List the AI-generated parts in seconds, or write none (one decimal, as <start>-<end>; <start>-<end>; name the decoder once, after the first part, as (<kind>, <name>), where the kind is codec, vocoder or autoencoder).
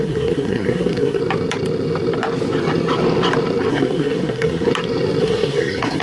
0.0-1.2 (codec, SNAC); 3.7-4.7; 5.2-6.0